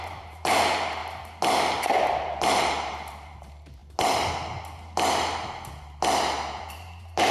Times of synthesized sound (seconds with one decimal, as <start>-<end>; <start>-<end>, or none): 0.0-1.0; 2.0-3.8; 6.7-7.3